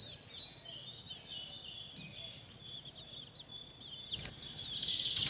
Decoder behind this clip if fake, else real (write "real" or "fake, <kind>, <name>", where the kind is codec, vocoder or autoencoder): real